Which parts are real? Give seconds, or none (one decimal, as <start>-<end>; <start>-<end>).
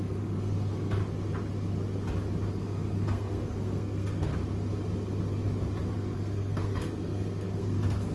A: 1.0-2.5; 4.3-5.9